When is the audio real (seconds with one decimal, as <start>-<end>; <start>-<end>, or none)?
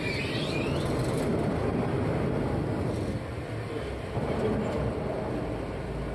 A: 0.0-6.1